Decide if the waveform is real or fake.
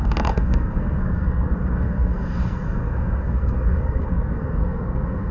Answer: fake